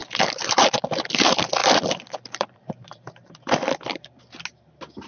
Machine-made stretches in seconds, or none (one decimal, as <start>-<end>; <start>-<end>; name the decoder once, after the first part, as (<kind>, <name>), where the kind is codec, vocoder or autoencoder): 0.0-1.0 (vocoder, BigVGAN v2); 1.6-4.2